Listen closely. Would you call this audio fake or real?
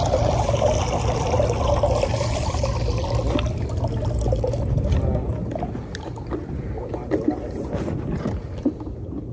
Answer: real